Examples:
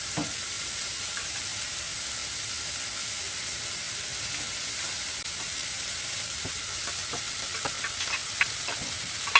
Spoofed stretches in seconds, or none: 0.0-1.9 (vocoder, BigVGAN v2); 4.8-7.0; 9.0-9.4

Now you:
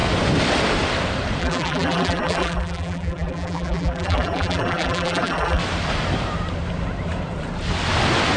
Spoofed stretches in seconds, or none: 1.4-5.6 (vocoder, BigVGAN v2)

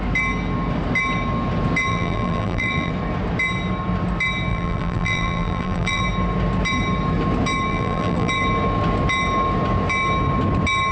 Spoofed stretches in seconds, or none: 1.9-2.9 (vocoder, BigVGAN v2); 4.5-6.0; 7.7-8.3

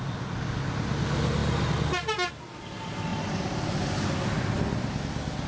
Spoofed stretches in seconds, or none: 3.1-5.0 (vocoder, BigVGAN v2)

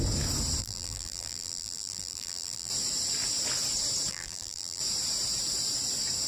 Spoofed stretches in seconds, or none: 0.6-2.7 (vocoder, BigVGAN v2); 4.1-4.8

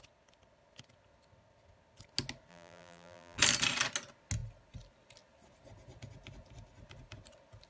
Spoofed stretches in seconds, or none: 2.5-3.4 (vocoder, BigVGAN v2)

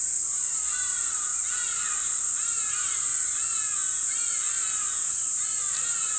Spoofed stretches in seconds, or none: 0.0-1.3 (vocoder, BigVGAN v2); 2.7-3.1; 5.1-6.2

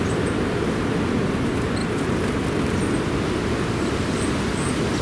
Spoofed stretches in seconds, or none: none